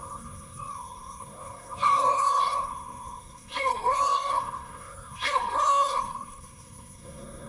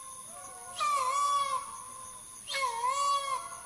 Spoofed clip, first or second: first